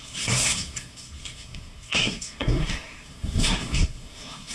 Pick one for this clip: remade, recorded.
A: remade